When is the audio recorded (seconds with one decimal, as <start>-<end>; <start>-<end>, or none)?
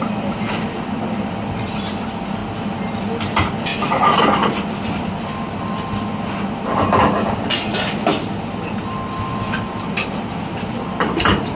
2.4-3.2; 3.7-5.6; 8.1-9.3